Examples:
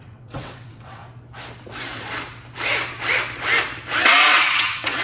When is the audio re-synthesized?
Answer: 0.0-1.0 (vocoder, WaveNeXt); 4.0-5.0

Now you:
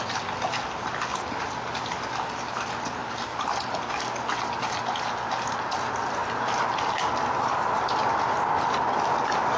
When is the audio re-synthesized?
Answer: none

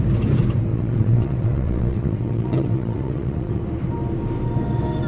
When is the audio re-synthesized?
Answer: 0.7-3.6 (vocoder, WaveNeXt)

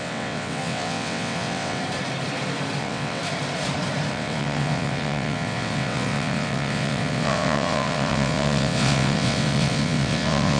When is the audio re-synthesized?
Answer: 0.0-1.8 (vocoder, WaveNeXt); 2.8-3.2; 4.1-10.6

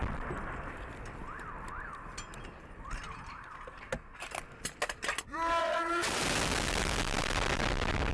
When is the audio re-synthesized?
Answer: 5.6-6.2 (vocoder, WaveNeXt)

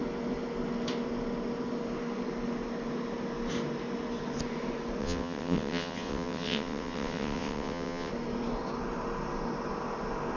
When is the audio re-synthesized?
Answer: 5.0-8.1 (vocoder, WaveNeXt)